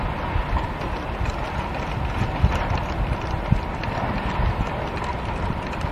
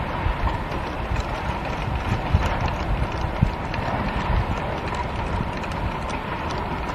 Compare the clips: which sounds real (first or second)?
first